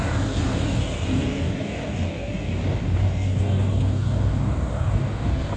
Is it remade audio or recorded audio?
remade